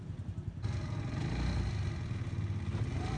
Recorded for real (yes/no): yes